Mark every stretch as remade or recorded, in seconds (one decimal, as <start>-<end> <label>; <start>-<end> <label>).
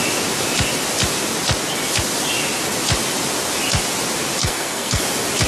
0.0-4.4 recorded; 4.4-5.0 remade; 5.0-5.5 recorded